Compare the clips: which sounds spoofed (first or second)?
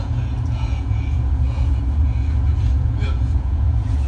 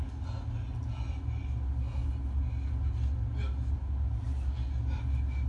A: first